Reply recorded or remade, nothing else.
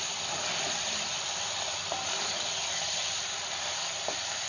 remade